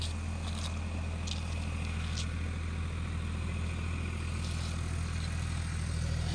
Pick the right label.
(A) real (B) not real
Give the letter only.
A